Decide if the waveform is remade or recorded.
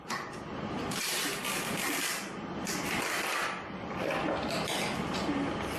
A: recorded